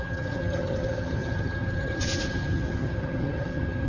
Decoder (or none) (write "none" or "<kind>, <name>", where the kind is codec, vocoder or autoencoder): vocoder, HiFi-GAN